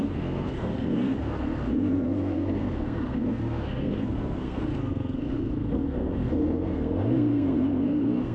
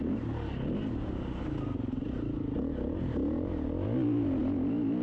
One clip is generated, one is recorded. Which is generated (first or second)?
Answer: first